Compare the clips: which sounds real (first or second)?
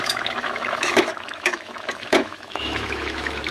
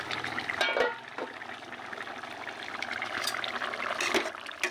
second